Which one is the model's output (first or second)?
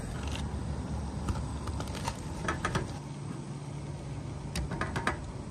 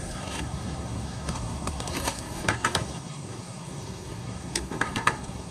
second